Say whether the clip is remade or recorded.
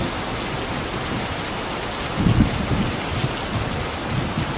recorded